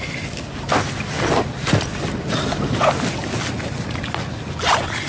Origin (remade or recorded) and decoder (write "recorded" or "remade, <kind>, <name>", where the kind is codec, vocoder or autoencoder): recorded